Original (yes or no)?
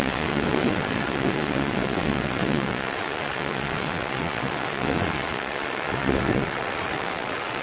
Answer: no